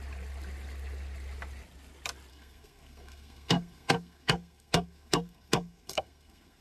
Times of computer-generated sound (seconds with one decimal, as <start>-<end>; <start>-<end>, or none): 2.3-6.6